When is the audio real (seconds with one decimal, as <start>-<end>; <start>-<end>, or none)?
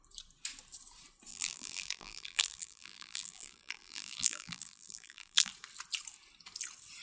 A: 0.0-1.3; 5.5-7.0